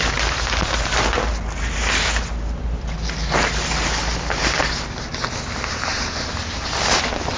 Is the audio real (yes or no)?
yes